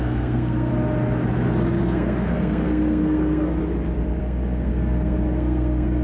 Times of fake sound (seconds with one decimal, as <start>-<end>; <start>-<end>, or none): 0.0-0.7; 1.8-3.6; 4.2-6.0